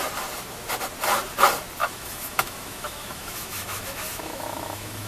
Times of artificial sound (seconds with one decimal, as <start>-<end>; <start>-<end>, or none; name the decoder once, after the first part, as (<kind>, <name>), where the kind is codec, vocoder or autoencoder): 1.8-5.1 (autoencoder, DAC-VAE)